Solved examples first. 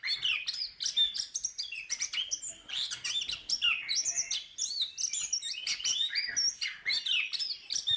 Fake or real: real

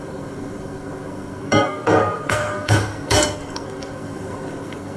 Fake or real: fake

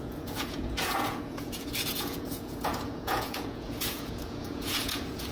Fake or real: fake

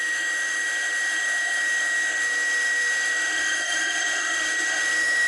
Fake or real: fake